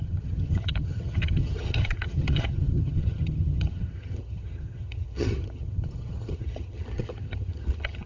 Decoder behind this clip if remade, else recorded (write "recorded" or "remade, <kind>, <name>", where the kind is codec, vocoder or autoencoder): remade, vocoder, HiFi-GAN